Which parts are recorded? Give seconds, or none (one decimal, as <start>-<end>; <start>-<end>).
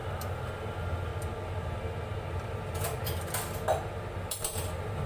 1.1-4.2